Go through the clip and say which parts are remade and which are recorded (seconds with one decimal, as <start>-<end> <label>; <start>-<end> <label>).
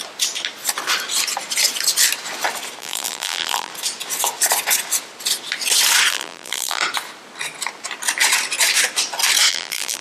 0.0-2.8 recorded; 2.8-3.7 remade; 3.7-6.1 recorded; 6.1-6.8 remade; 6.8-9.5 recorded; 9.5-10.0 remade